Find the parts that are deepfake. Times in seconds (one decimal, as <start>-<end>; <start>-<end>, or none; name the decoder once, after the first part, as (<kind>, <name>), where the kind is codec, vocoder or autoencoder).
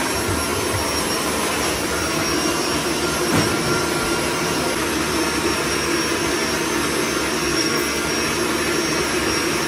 7.5-8.1 (codec, SNAC)